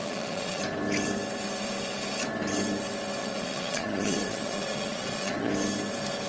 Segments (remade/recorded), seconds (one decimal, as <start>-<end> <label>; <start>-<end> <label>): 0.0-0.6 remade; 0.6-3.2 recorded; 3.2-5.5 remade; 5.5-6.3 recorded